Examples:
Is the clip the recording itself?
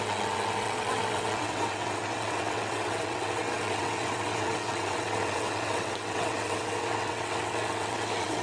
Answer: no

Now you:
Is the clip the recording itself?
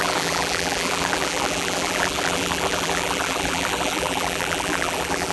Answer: no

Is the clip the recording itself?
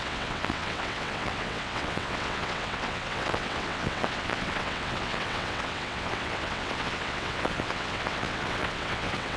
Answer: no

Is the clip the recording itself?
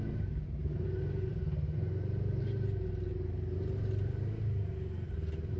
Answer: yes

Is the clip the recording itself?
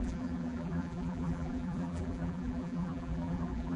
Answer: no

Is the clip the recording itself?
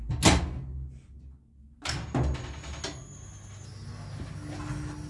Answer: yes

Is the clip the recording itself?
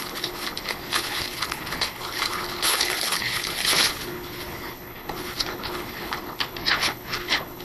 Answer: no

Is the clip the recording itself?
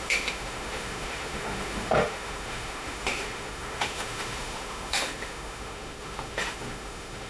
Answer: no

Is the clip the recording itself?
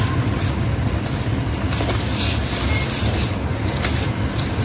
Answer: yes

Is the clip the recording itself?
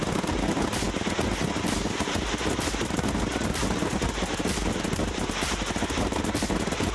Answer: yes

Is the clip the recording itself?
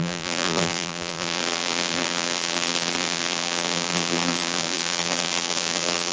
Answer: no